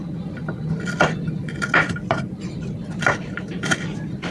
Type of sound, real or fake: real